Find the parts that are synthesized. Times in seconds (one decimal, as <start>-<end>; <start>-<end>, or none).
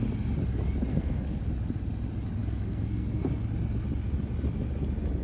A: 0.9-1.5; 2.4-3.4